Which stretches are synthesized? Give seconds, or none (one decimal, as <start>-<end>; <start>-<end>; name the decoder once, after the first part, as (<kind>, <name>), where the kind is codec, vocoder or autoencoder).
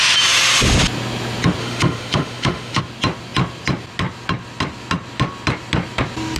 1.6-2.8 (autoencoder, DAC-VAE)